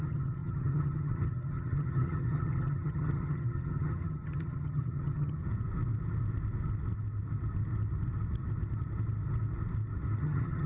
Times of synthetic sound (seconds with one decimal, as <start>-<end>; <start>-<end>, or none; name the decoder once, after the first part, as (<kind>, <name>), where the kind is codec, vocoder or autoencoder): 0.0-5.4 (vocoder, HiFi-GAN); 10.2-10.7